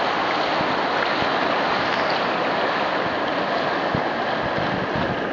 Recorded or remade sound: recorded